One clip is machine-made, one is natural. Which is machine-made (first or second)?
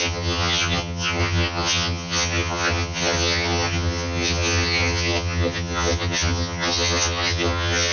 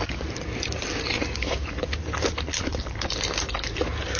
first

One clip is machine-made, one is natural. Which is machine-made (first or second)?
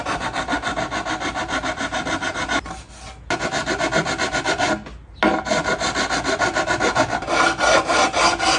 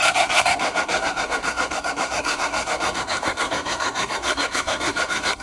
second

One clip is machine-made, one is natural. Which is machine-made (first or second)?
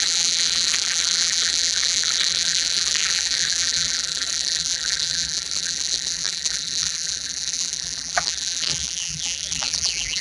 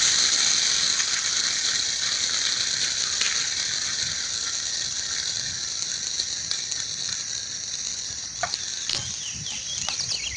first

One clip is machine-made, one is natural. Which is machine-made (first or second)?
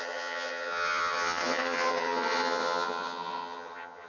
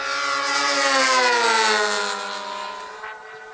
first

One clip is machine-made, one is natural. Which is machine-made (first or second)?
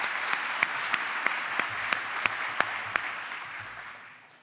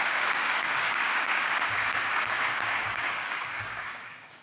second